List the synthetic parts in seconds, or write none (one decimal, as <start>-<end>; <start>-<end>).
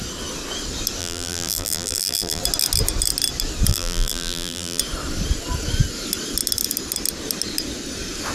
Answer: 1.0-2.4; 3.7-4.8